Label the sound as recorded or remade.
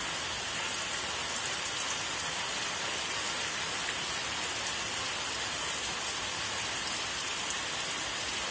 recorded